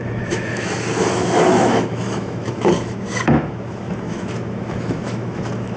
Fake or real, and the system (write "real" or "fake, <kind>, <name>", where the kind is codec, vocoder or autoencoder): fake, autoencoder, DAC-VAE